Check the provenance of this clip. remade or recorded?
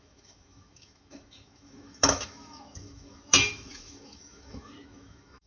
remade